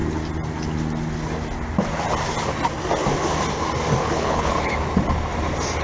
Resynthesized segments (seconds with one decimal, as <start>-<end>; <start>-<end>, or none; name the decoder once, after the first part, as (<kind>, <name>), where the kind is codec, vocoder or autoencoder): 4.0-4.5 (codec, HILCodec)